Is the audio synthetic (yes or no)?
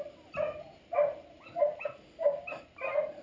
no